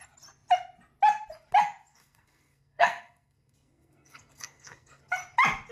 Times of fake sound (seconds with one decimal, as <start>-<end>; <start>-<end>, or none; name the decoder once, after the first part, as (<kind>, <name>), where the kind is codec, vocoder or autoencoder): 1.9-5.0 (codec, SNAC)